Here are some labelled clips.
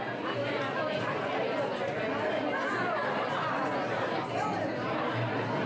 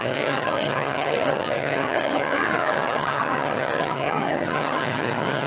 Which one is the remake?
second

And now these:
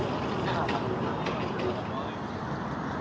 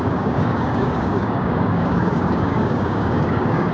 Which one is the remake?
second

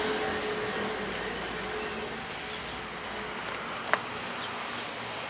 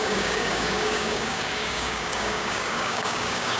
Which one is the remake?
second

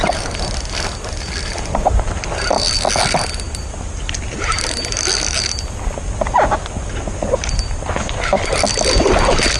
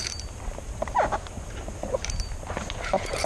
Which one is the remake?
second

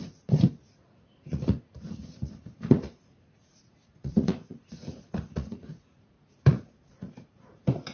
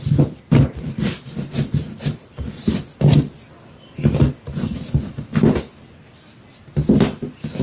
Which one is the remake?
first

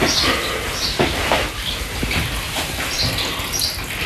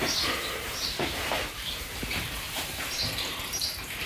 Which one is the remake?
second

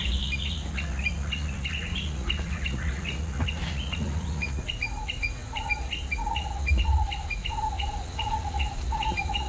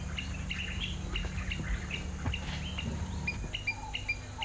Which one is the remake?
first